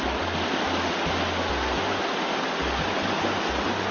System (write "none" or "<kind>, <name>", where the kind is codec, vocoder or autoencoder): none